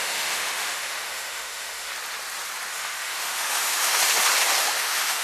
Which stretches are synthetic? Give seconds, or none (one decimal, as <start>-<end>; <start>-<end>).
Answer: 0.0-1.9; 2.7-4.0; 4.6-5.2